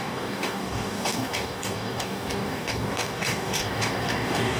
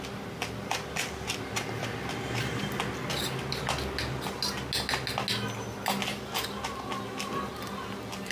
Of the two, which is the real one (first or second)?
second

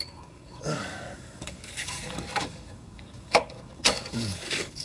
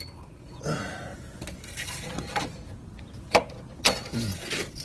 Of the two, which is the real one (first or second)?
second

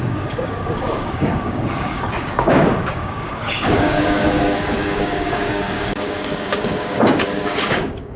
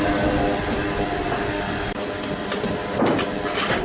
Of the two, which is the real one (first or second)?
second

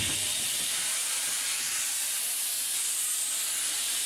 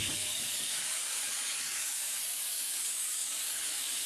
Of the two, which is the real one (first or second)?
first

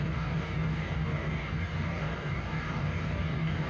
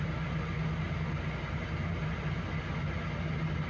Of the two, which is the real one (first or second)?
second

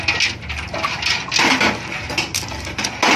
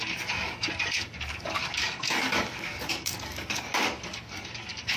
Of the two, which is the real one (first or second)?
first